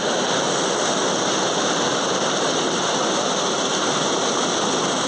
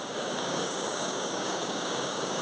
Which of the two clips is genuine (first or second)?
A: first